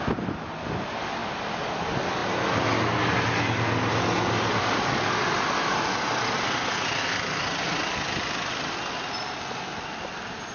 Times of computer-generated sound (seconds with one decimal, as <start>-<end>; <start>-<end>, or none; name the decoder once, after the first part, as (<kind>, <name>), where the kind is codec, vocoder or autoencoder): none